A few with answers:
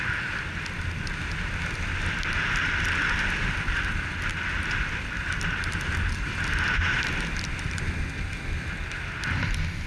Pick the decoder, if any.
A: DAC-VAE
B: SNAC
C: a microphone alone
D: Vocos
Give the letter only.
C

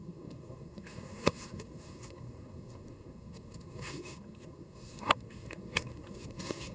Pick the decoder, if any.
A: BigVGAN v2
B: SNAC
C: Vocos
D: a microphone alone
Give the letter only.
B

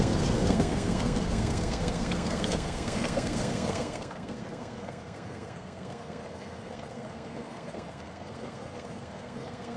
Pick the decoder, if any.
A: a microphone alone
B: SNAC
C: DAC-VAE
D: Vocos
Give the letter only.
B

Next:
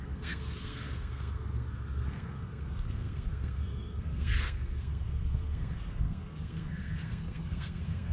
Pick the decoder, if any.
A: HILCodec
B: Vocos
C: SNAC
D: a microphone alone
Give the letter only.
C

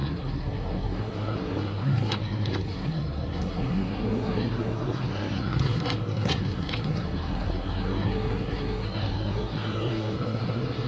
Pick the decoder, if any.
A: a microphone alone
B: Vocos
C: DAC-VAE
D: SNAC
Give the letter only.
D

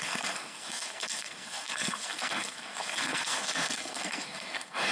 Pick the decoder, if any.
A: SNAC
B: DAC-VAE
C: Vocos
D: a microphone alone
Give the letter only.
A